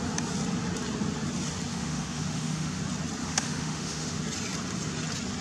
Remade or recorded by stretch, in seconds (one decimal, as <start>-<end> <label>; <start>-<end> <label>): 0.0-1.7 recorded; 1.7-2.8 remade; 2.8-3.2 recorded; 3.2-4.2 remade; 4.2-5.4 recorded